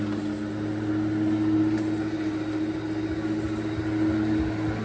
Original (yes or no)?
yes